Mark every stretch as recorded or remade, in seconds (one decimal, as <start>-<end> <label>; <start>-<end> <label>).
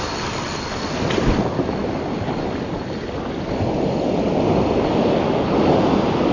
0.0-6.3 recorded